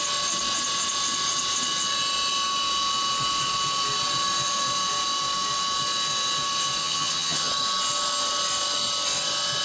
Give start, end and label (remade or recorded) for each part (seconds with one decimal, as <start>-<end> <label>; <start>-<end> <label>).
0.0-6.8 recorded; 6.8-7.5 remade; 7.5-9.6 recorded